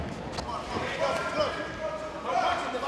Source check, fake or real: real